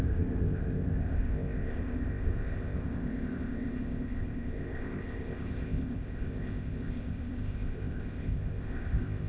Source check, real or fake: fake